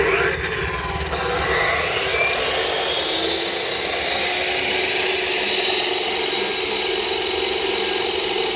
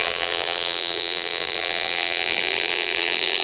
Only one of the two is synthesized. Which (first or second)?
second